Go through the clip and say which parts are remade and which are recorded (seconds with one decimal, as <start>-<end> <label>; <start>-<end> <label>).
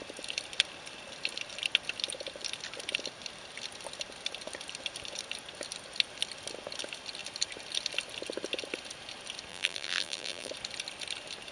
0.0-9.5 recorded; 9.5-10.5 remade; 10.5-11.5 recorded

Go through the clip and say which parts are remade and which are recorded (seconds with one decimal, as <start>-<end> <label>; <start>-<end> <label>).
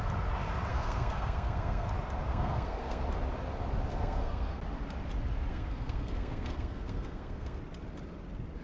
0.0-0.7 recorded; 0.7-1.9 remade; 1.9-2.3 recorded; 2.3-3.0 remade; 3.0-3.9 recorded; 3.9-4.6 remade; 4.6-5.5 recorded; 5.5-7.6 remade; 7.6-8.6 recorded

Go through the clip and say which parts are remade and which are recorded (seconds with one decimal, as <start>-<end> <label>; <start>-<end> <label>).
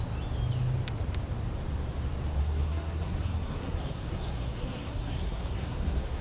0.0-2.4 recorded; 2.4-6.2 remade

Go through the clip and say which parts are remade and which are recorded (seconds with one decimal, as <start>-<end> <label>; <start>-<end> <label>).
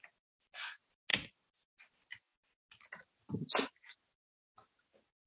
0.0-5.3 recorded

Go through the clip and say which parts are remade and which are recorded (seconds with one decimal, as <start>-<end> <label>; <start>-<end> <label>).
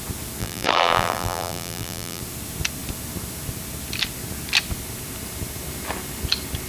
0.0-0.4 recorded; 0.4-2.2 remade; 2.2-6.7 recorded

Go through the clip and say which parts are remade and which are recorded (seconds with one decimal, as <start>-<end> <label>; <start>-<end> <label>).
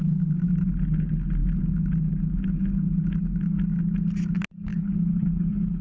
0.0-4.7 recorded; 4.7-5.8 remade